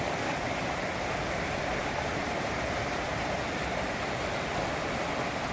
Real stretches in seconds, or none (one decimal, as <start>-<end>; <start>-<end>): 0.0-1.8; 2.5-5.5